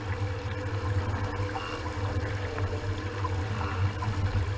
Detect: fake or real real